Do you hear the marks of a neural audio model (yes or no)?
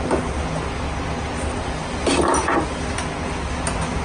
no